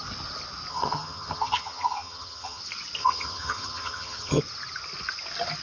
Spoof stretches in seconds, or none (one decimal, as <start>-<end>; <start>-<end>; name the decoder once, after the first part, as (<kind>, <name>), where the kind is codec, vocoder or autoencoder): 0.7-2.6 (vocoder, HiFi-GAN); 3.0-4.4